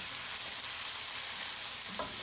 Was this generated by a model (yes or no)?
no